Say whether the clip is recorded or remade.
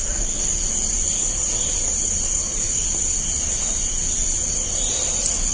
recorded